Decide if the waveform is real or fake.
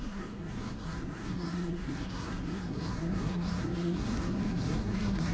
fake